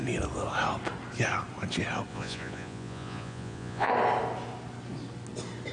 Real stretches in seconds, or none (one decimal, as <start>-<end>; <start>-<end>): 0.0-2.1; 3.9-5.7